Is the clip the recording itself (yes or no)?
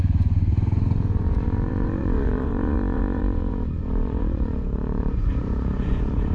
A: no